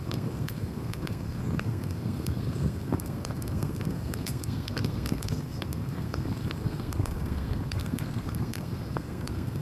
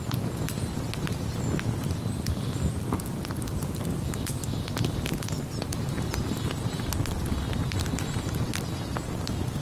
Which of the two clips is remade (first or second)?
first